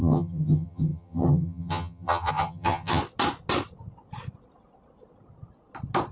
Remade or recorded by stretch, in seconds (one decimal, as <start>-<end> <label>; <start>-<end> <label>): 0.0-3.0 remade; 3.0-6.1 recorded